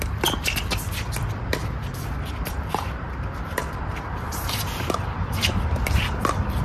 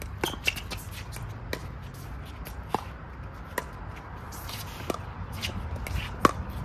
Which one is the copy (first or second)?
first